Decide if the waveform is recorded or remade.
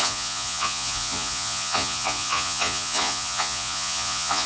remade